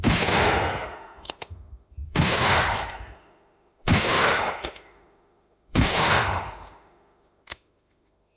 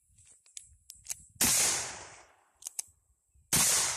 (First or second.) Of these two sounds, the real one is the second